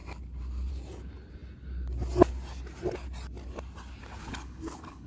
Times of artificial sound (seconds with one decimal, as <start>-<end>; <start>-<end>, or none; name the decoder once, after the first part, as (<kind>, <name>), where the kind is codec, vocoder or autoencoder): 4.3-5.1 (codec, HILCodec)

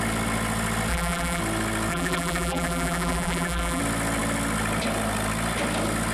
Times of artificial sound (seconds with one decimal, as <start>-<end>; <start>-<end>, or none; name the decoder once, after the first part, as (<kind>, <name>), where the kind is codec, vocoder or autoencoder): 0.9-1.4 (vocoder, BigVGAN v2); 1.9-3.8